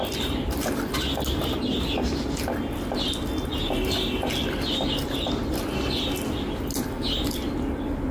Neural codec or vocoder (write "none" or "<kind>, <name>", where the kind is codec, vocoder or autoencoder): none